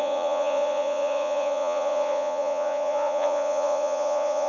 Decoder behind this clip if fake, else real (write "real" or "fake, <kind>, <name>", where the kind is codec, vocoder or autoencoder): fake, vocoder, Vocos